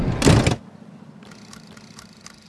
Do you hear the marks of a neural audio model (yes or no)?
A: no